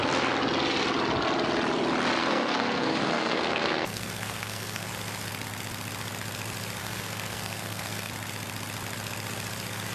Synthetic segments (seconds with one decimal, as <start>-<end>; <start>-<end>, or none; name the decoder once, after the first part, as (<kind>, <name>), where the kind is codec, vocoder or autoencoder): 2.2-4.9 (codec, SNAC); 6.8-8.1